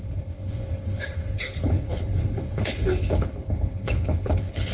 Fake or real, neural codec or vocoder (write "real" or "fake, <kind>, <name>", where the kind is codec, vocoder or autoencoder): fake, codec, HILCodec